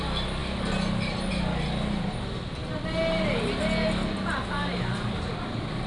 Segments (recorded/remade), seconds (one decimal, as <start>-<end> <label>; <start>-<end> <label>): 0.0-5.9 recorded